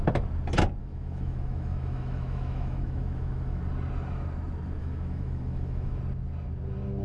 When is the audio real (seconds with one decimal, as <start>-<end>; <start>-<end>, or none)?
0.0-0.8; 3.6-4.8; 6.0-7.0